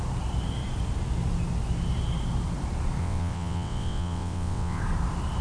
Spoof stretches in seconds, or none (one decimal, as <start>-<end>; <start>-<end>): 3.0-4.8